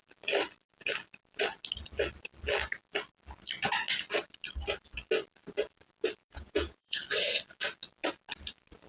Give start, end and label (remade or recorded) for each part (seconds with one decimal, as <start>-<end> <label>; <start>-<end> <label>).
0.0-6.2 recorded; 6.2-7.0 remade; 7.0-8.9 recorded